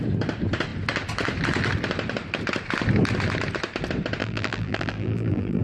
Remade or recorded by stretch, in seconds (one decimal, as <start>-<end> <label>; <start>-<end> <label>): 0.0-4.2 recorded; 4.2-5.6 remade